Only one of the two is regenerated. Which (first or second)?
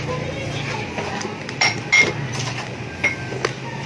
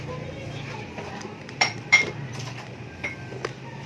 second